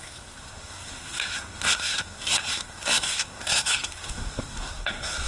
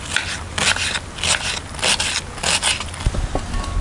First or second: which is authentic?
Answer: second